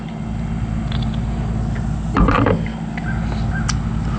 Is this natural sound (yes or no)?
yes